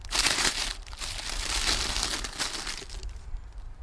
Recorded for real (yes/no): no